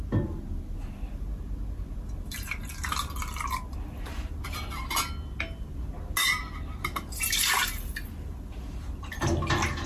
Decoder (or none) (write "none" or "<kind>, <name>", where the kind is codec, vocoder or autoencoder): none